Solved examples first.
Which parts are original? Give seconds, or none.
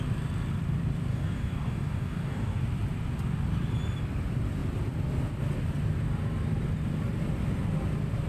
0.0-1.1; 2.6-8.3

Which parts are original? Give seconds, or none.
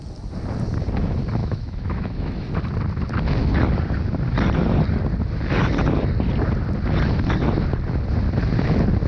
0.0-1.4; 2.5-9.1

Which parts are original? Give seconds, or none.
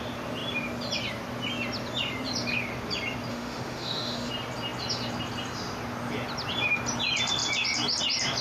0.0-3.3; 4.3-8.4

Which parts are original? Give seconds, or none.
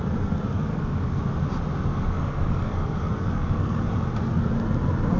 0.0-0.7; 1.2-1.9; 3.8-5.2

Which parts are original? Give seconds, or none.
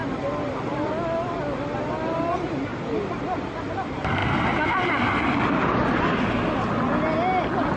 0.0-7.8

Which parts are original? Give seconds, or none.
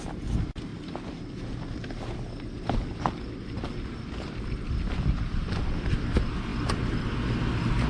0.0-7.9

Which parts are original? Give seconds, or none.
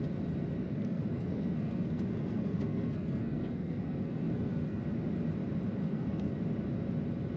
0.0-0.6; 4.8-5.8; 6.3-7.4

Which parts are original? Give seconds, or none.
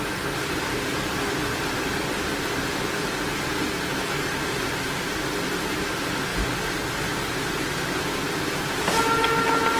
0.0-9.8